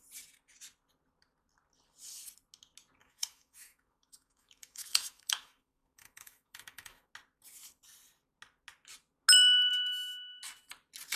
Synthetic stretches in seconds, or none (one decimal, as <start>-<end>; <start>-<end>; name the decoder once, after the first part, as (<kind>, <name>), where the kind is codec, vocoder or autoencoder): 3.0-7.1 (autoencoder, DAC-VAE); 9.7-10.4